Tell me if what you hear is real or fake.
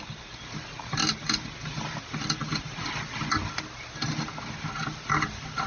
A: real